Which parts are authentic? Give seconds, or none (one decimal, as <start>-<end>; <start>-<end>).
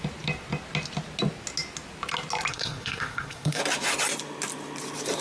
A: 0.0-2.5; 3.6-5.2